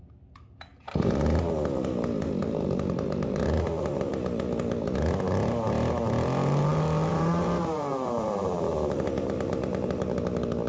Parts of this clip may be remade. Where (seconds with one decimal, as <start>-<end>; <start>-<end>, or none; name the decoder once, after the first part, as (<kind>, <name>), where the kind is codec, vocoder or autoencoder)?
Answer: 0.7-1.4 (vocoder, BigVGAN v2); 2.4-4.1; 7.1-10.2